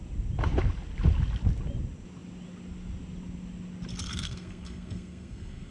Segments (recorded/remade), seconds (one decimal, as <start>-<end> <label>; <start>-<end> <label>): 0.0-4.1 recorded; 4.1-5.7 remade